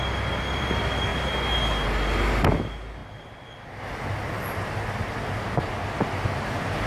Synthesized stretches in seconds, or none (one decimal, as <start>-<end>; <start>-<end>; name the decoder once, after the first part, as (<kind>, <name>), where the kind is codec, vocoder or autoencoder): none